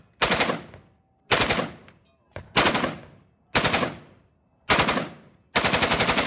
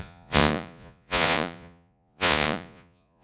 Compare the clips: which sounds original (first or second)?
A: first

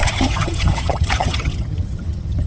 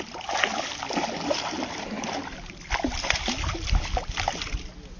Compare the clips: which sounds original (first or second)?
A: second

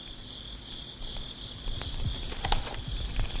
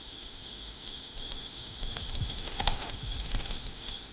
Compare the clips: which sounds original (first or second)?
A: first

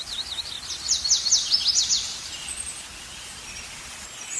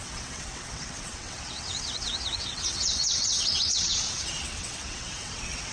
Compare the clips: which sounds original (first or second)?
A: first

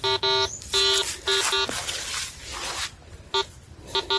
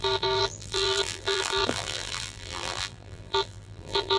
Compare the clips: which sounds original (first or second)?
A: first